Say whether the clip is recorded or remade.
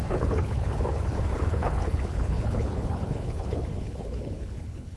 remade